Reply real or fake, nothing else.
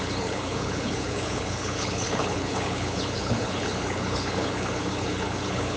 fake